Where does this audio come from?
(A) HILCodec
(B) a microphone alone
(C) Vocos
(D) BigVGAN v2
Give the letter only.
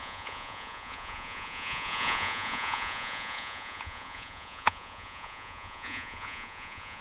C